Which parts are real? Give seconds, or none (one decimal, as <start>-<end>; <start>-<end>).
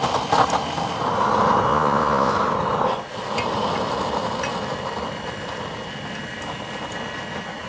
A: 0.0-1.7; 2.3-7.7